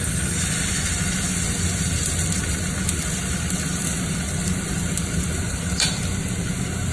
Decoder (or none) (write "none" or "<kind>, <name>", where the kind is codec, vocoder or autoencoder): none